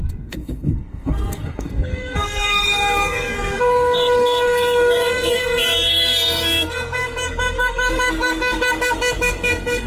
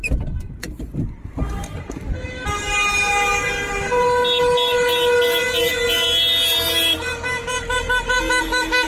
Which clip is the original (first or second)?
second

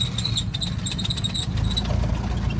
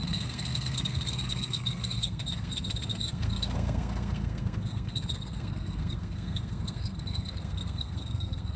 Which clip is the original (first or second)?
first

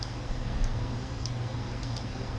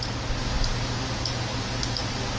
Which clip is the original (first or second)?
second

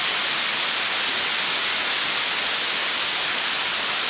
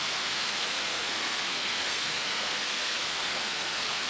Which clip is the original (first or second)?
first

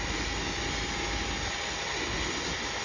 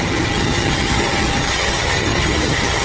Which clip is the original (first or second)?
first